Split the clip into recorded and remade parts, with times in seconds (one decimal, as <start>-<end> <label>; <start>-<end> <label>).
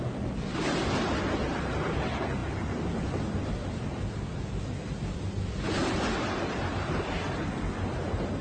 0.0-8.4 recorded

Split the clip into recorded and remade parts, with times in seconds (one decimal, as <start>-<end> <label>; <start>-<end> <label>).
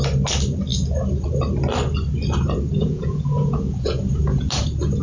0.0-2.8 recorded; 2.8-4.5 remade; 4.5-5.0 recorded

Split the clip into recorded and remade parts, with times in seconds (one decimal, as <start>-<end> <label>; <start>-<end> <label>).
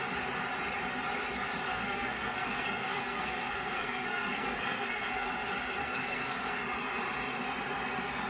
0.0-1.7 recorded; 1.7-5.3 remade; 5.3-5.8 recorded; 5.8-6.6 remade; 6.6-8.3 recorded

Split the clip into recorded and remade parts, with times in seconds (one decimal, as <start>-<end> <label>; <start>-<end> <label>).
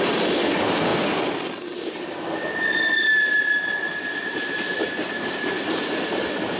0.0-0.9 remade; 0.9-4.9 recorded; 4.9-6.6 remade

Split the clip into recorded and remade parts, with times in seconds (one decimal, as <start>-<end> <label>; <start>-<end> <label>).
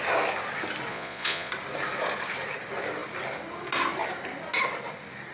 0.0-0.9 recorded; 0.9-1.5 remade; 1.5-5.3 recorded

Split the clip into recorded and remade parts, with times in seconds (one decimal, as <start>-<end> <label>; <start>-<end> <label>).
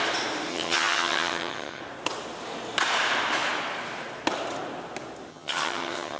0.0-0.5 recorded; 0.5-1.8 remade; 1.8-5.3 recorded; 5.3-6.2 remade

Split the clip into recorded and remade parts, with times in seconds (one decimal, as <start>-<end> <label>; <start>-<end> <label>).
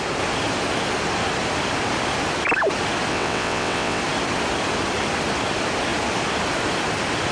0.0-3.1 recorded; 3.1-4.0 remade; 4.0-7.3 recorded